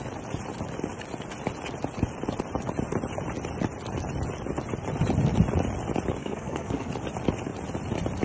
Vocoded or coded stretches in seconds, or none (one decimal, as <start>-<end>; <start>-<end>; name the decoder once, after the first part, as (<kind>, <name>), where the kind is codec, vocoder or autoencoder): 6.2-6.9 (codec, SNAC)